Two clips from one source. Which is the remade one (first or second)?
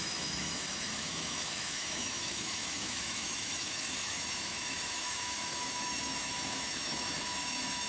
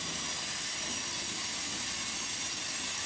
first